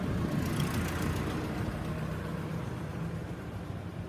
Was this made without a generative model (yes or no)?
yes